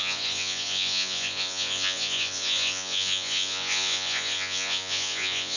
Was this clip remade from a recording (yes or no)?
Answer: yes